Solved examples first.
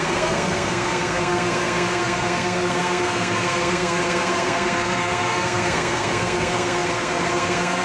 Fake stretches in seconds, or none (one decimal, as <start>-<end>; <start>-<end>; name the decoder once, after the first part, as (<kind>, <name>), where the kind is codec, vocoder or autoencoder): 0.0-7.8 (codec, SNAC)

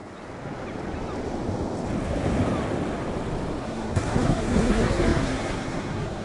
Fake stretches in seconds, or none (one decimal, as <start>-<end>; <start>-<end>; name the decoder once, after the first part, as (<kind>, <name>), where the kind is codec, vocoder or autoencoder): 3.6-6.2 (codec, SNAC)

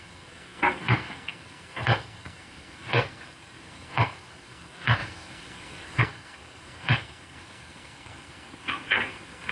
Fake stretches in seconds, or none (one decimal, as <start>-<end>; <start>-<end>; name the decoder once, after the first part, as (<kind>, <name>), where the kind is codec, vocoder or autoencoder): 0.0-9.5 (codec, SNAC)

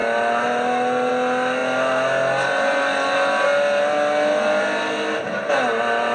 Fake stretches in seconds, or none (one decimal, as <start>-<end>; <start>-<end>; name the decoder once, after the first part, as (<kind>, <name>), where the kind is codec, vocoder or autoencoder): none

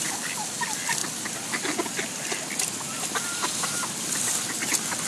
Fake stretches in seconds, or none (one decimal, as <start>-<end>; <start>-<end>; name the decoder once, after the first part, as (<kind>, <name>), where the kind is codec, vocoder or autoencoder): none

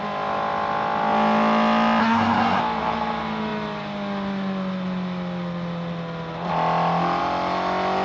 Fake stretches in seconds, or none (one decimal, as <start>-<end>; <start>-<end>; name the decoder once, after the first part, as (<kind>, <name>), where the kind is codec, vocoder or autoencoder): 2.0-2.6 (codec, SNAC)

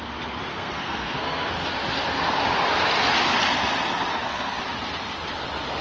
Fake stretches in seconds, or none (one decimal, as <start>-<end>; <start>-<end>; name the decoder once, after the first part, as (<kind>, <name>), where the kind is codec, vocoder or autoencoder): 0.5-1.5 (codec, SNAC); 4.1-4.6